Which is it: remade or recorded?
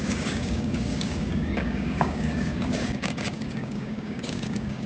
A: remade